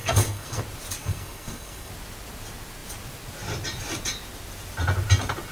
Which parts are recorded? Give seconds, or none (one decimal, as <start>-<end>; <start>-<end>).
0.6-1.0; 1.9-5.5